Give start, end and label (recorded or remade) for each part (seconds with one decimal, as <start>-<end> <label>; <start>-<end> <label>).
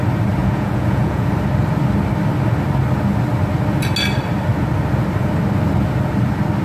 0.0-0.4 recorded; 0.4-1.3 remade; 1.3-6.6 recorded